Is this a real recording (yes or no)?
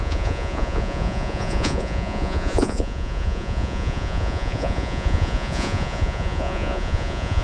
no